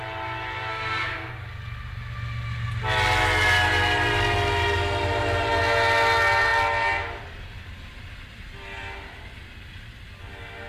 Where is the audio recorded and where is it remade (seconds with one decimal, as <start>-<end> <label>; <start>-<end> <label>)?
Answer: 0.0-0.7 recorded; 0.7-1.3 remade; 1.3-10.7 recorded